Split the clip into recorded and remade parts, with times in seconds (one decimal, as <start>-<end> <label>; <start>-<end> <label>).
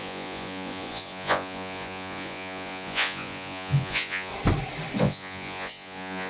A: 0.0-4.3 remade; 4.3-5.0 recorded; 5.0-6.3 remade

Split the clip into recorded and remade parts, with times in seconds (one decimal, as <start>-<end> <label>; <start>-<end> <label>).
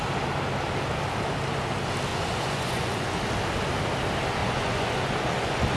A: 0.0-2.1 recorded; 2.1-3.2 remade; 3.2-4.4 recorded; 4.4-5.8 remade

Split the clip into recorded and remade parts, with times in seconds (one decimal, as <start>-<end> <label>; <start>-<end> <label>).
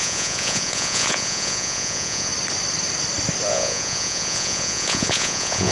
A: 0.0-2.3 remade; 2.3-3.5 recorded; 3.5-5.7 remade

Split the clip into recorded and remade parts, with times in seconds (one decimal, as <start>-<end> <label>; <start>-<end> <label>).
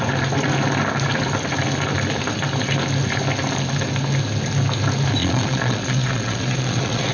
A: 0.0-5.2 recorded; 5.2-7.1 remade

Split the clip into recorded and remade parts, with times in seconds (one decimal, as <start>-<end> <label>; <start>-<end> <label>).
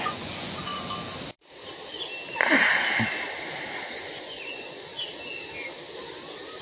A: 0.0-0.7 remade; 0.7-4.0 recorded; 4.0-4.9 remade; 4.9-6.6 recorded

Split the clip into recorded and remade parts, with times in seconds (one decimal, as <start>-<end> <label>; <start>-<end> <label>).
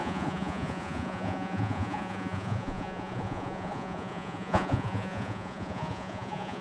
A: 0.0-6.6 remade